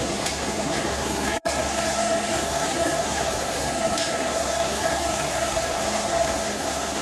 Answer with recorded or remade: remade